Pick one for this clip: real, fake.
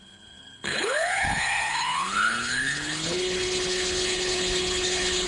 fake